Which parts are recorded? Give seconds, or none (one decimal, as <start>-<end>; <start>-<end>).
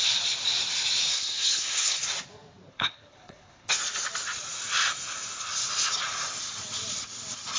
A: 0.0-1.1; 2.0-2.7; 3.7-7.6